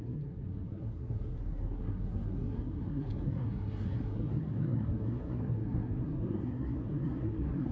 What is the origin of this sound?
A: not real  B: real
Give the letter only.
A